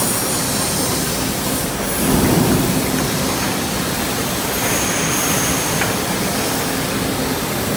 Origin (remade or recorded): recorded